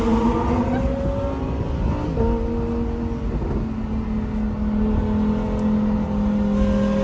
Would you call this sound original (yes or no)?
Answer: yes